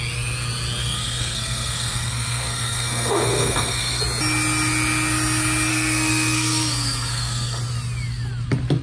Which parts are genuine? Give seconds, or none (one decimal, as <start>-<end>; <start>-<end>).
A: 0.0-0.8; 4.0-5.7; 7.6-8.8